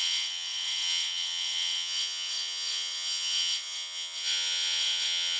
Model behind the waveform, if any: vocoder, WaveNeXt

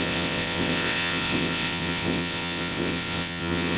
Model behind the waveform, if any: vocoder, WaveNeXt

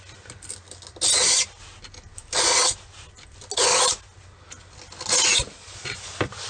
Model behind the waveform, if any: none